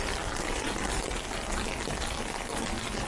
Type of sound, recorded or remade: recorded